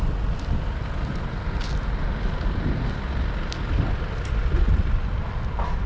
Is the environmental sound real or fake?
real